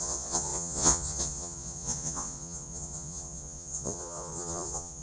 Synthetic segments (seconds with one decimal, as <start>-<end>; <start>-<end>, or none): 0.0-5.0